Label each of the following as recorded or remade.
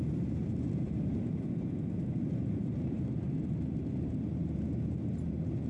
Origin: remade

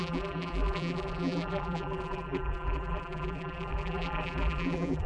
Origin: remade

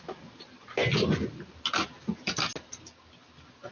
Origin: recorded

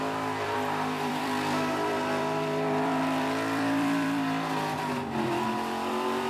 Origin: remade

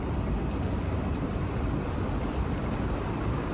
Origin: remade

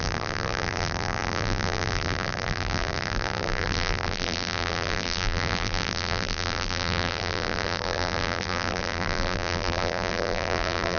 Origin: remade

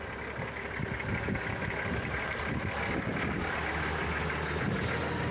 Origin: recorded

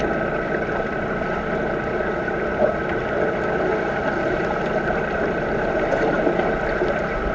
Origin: recorded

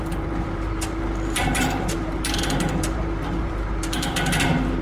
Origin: remade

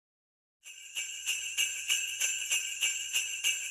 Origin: recorded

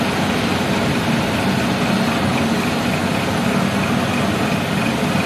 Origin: recorded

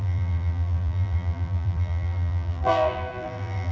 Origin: remade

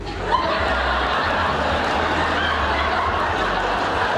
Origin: recorded